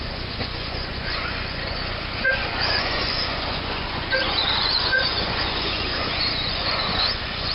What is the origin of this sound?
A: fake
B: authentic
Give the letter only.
A